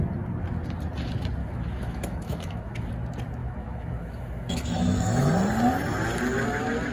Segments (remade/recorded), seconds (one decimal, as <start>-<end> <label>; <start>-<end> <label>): 0.0-1.4 recorded; 1.4-2.9 remade; 2.9-3.4 recorded; 3.4-5.3 remade; 5.3-6.9 recorded